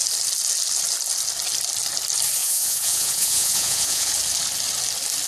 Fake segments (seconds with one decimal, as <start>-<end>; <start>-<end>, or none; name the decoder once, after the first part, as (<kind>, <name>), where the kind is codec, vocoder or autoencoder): 2.4-4.1 (vocoder, Vocos)